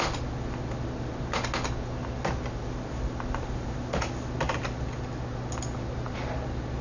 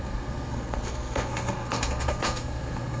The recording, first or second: first